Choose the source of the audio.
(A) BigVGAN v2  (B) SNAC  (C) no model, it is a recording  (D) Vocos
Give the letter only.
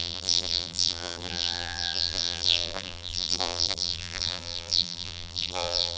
A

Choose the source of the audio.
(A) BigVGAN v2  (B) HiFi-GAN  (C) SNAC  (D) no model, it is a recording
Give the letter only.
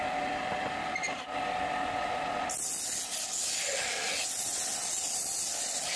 D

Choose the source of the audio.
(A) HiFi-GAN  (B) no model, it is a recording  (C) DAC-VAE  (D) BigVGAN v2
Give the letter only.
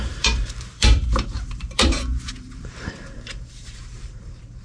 D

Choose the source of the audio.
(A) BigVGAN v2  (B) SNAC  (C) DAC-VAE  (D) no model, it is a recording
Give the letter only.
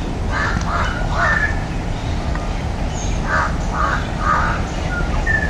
D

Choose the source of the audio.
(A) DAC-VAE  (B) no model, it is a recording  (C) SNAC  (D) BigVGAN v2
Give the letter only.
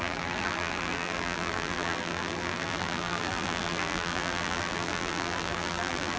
D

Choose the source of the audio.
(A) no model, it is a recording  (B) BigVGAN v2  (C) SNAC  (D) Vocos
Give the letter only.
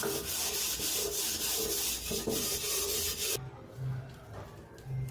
A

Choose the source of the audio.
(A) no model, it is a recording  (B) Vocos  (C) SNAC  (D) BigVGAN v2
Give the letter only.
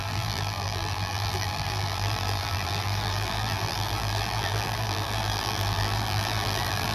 D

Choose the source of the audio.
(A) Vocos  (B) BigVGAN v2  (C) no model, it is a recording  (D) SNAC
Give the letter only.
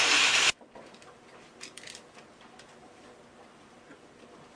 B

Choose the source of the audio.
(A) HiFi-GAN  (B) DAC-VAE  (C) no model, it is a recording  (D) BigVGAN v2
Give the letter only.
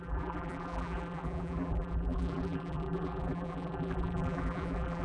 D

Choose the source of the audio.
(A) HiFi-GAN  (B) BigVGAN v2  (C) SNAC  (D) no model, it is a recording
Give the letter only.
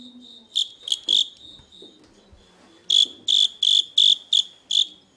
D